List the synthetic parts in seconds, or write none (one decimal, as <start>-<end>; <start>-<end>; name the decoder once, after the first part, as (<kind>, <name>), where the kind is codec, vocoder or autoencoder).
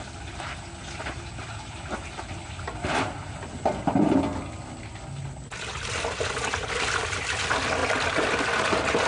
none